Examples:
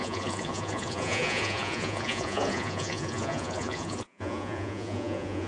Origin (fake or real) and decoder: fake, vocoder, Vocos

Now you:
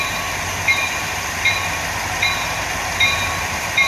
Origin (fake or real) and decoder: fake, vocoder, BigVGAN v2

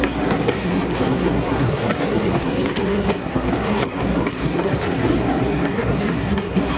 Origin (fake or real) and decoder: fake, codec, SNAC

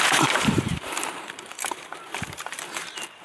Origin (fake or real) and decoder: fake, vocoder, BigVGAN v2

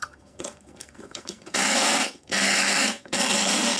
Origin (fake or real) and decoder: fake, codec, SNAC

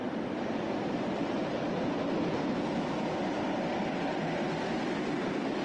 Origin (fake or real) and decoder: fake, vocoder, BigVGAN v2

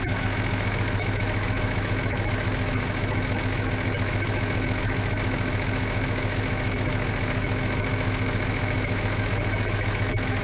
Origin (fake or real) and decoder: fake, autoencoder, DAC-VAE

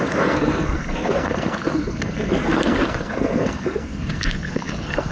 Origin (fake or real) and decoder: fake, codec, SNAC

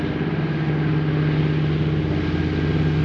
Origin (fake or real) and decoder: real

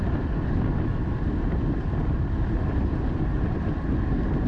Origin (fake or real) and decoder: fake, vocoder, BigVGAN v2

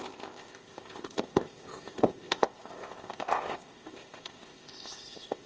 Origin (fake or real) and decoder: fake, codec, ZipCodec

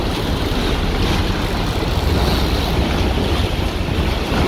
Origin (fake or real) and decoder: real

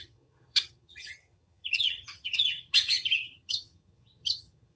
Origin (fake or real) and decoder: fake, vocoder, HiFi-GAN